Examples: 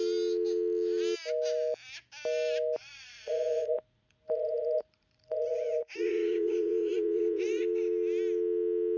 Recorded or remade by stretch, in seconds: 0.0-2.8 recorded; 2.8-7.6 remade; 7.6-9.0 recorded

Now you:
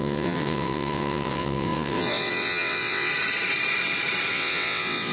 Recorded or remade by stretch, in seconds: 0.0-3.1 remade; 3.1-4.3 recorded; 4.3-5.1 remade